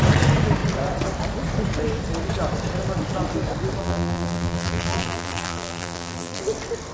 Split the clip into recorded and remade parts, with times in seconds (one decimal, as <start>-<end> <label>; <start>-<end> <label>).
0.0-3.8 recorded; 3.8-6.4 remade; 6.4-6.9 recorded